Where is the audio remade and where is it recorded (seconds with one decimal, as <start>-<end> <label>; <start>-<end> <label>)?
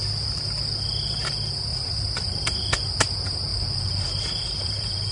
0.0-1.7 recorded; 1.7-2.6 remade; 2.6-3.5 recorded; 3.5-5.1 remade